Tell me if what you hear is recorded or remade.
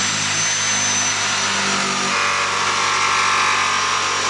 recorded